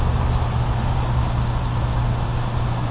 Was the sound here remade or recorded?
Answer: recorded